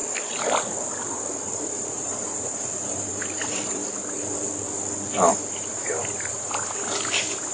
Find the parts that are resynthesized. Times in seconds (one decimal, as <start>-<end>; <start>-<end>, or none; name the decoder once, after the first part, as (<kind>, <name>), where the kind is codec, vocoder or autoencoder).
1.6-3.8 (vocoder, BigVGAN v2); 5.5-7.5